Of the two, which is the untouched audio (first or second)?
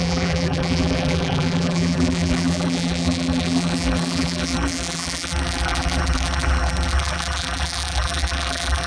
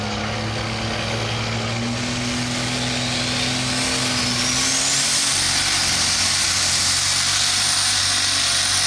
second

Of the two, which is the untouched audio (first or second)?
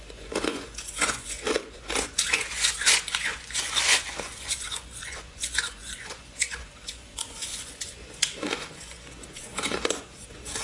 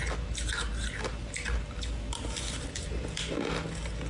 second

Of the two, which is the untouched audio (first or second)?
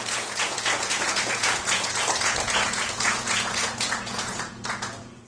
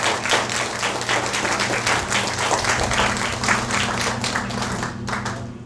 second